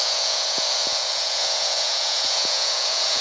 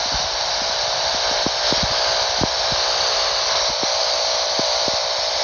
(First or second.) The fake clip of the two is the first